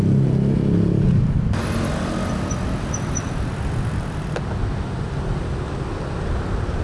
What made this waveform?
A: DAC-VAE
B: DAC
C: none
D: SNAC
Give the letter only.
C